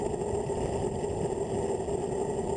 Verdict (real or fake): real